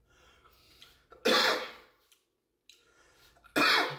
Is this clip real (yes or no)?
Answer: yes